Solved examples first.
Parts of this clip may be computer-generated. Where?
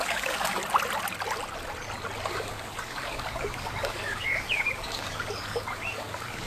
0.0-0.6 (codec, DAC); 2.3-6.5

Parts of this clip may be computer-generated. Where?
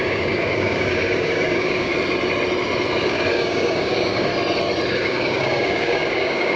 0.0-1.9 (codec, DAC); 3.0-4.3; 4.9-6.6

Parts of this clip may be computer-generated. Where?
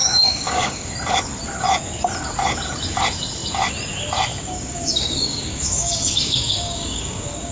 0.0-0.9 (codec, DAC); 4.3-7.5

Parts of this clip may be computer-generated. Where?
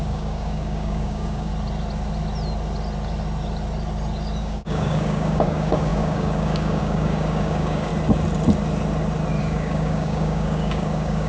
0.0-1.5 (codec, DAC); 4.4-7.9; 9.4-11.3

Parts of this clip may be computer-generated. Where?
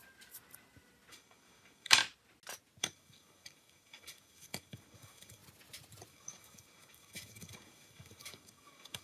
1.1-2.0 (codec, DAC); 2.8-5.4; 6.1-9.0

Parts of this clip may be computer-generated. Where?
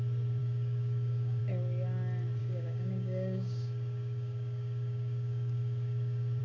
0.4-1.4 (codec, DAC); 2.4-6.4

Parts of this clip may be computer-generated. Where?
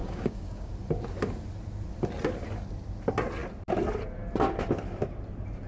0.0-0.7 (codec, DAC)